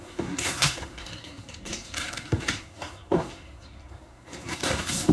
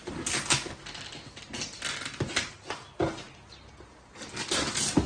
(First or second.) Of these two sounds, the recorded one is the second